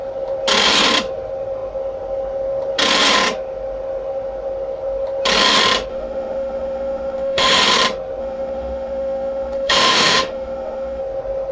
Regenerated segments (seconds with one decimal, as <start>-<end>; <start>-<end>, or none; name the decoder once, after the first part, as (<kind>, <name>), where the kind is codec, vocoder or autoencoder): 5.9-7.6 (autoencoder, DAC-VAE); 8.2-11.0